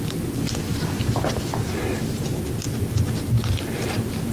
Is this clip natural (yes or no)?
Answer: yes